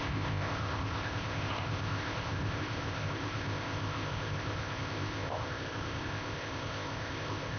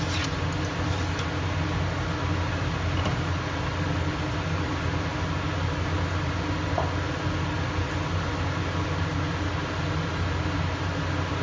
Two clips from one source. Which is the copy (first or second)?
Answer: first